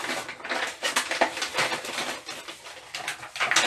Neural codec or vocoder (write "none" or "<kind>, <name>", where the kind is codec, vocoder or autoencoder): none